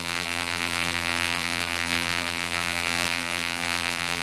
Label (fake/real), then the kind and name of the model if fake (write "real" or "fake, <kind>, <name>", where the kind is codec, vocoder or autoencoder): fake, vocoder, BigVGAN v2